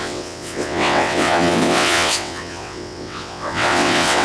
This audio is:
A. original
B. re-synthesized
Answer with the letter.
B